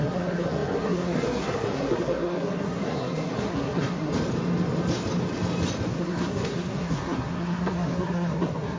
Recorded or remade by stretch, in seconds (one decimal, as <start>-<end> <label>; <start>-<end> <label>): 0.0-4.1 remade; 4.1-5.9 recorded; 5.9-8.8 remade

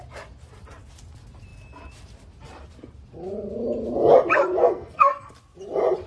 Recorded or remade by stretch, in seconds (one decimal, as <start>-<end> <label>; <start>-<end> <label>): 0.0-4.6 recorded; 4.6-5.3 remade; 5.3-6.1 recorded

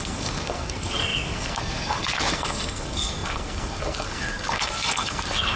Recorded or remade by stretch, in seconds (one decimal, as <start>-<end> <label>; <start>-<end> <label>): 0.0-5.6 remade

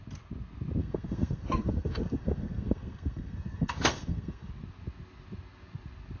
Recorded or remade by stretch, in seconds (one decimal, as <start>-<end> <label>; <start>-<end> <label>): 0.0-0.8 recorded; 0.8-4.5 remade; 4.5-6.2 recorded

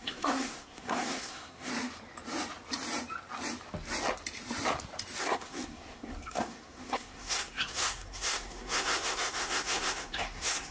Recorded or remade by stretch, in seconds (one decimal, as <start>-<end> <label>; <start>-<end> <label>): 0.0-1.7 remade; 1.7-5.2 recorded; 5.2-10.7 remade

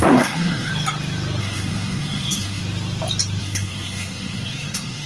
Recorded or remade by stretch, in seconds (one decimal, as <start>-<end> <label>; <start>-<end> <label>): 0.0-0.7 remade; 0.7-1.4 recorded; 1.4-2.6 remade; 2.6-3.4 recorded; 3.4-5.1 remade

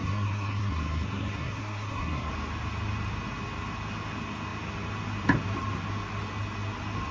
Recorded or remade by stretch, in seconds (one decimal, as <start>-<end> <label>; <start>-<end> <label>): 0.0-2.3 remade; 2.3-7.1 recorded

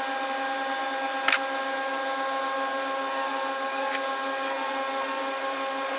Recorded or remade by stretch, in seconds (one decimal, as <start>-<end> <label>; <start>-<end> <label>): 0.0-6.0 recorded